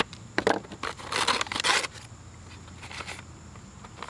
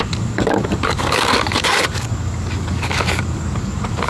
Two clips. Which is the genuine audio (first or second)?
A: first